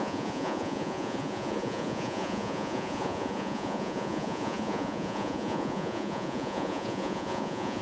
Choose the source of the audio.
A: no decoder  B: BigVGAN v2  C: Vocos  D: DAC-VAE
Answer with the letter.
C